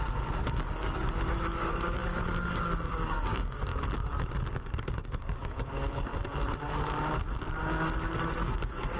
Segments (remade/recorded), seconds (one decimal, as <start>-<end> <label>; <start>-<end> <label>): 0.0-3.7 remade; 3.7-4.5 recorded; 4.5-6.1 remade; 6.1-8.4 recorded; 8.4-9.0 remade